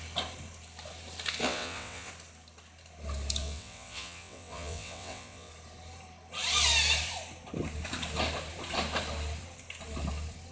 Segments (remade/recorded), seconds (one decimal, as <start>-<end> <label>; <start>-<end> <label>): 0.0-1.4 recorded; 1.4-2.1 remade; 2.1-3.4 recorded; 3.4-5.5 remade; 5.5-10.5 recorded